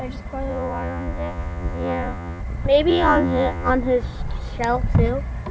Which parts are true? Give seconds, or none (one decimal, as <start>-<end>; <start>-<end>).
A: 0.0-0.5; 2.4-2.9; 3.7-5.5